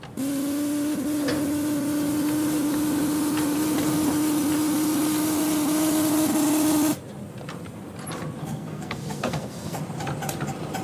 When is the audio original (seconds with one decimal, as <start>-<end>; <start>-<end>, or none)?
0.0-8.4; 9.8-10.8